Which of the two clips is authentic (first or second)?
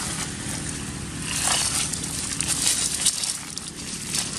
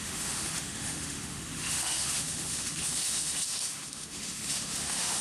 first